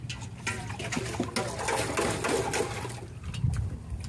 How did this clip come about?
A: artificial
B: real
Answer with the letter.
B